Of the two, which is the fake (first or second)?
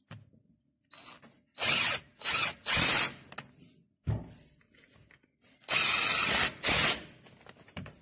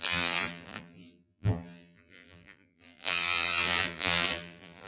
second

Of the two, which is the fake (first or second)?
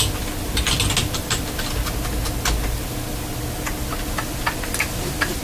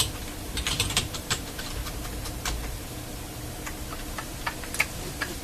second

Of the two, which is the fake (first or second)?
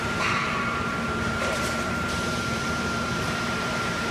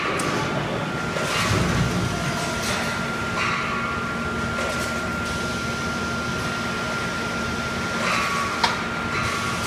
first